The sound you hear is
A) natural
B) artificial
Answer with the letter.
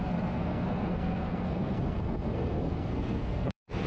B